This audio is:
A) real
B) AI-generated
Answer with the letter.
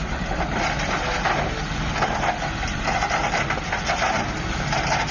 A